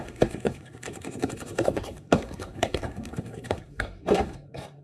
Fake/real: fake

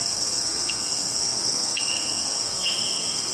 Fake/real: fake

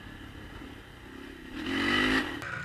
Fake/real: real